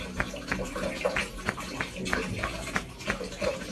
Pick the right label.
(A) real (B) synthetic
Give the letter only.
A